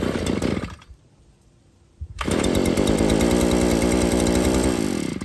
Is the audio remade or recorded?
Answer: remade